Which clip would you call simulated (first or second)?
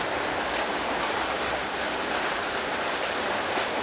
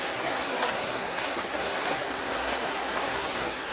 second